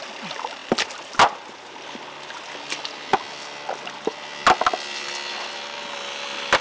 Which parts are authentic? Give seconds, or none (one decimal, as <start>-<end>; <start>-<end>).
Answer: 0.0-6.6